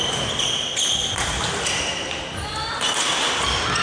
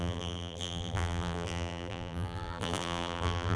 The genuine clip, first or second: first